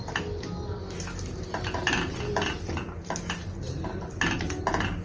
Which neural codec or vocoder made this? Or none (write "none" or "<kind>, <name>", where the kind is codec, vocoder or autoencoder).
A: none